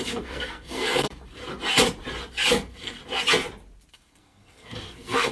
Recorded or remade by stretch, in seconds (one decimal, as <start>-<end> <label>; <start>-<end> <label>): 0.0-1.4 remade; 1.4-2.5 recorded; 2.5-3.0 remade; 3.0-3.9 recorded; 3.9-5.3 remade